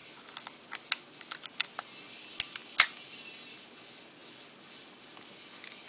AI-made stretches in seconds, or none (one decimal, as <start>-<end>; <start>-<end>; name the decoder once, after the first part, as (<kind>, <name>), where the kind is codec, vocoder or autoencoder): none